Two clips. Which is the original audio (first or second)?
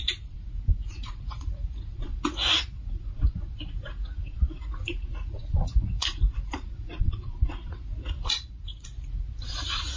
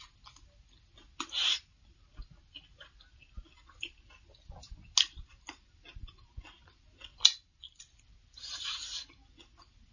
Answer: second